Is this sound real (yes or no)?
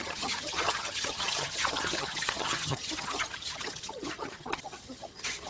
no